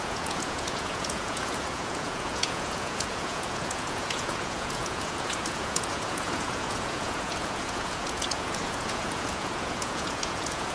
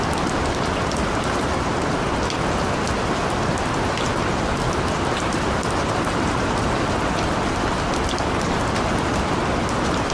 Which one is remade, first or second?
first